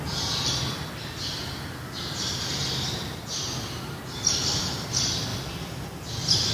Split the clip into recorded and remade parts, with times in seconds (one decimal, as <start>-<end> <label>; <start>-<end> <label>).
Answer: 0.0-6.5 recorded